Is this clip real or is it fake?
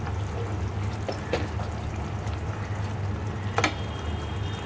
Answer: real